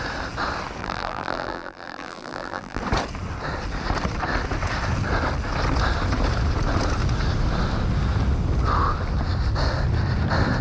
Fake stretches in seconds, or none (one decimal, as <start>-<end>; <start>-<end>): 0.8-2.8